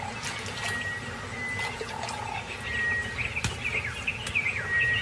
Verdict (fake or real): real